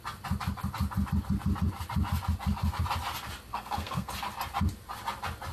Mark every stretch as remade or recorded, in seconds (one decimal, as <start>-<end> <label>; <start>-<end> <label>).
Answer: 0.0-3.5 recorded; 3.5-4.1 remade; 4.1-5.5 recorded